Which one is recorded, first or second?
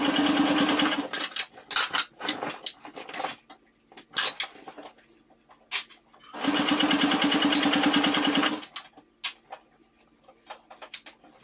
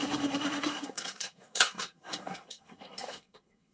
first